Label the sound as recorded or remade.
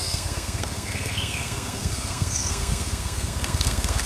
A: remade